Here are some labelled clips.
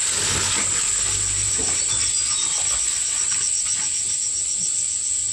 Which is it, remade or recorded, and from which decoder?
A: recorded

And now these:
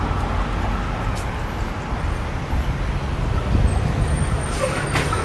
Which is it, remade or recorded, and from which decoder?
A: recorded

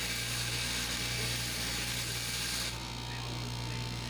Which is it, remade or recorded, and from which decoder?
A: recorded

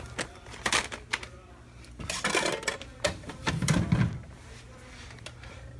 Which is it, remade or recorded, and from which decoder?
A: recorded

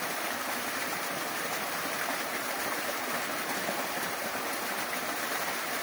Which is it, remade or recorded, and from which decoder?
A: remade, vocoder, BigVGAN v2